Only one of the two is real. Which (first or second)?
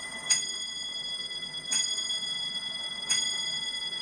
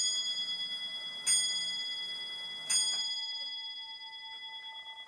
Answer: second